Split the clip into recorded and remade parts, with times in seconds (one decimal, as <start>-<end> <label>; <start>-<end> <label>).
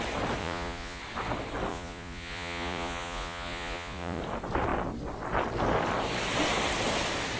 0.0-0.4 recorded; 0.4-1.0 remade; 1.0-1.7 recorded; 1.7-4.2 remade; 4.2-7.4 recorded